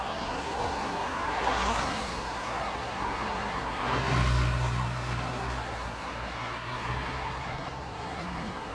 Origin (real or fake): fake